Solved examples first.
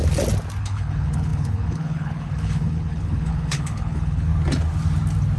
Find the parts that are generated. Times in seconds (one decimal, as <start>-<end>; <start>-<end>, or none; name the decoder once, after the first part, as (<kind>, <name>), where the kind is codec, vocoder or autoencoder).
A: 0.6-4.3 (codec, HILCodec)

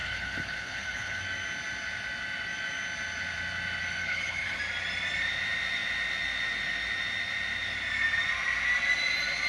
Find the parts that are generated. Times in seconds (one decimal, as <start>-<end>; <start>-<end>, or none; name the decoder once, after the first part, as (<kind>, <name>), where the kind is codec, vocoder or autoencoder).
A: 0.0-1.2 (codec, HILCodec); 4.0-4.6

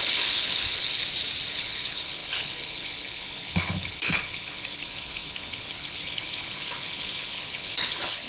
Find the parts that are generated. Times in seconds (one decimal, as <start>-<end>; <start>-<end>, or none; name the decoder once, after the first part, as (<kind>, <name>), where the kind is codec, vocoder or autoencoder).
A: 0.0-1.0 (codec, HILCodec); 1.5-8.3

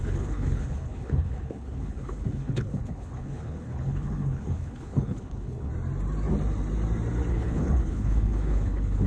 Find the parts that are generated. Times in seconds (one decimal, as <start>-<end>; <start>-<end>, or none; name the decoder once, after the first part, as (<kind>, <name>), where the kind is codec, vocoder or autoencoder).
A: 0.0-5.7 (codec, HILCodec); 7.3-9.1

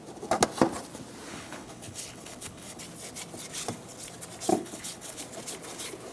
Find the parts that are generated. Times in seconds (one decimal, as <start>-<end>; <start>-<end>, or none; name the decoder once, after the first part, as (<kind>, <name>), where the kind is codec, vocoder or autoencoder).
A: 1.3-2.8 (codec, HILCodec); 4.5-5.2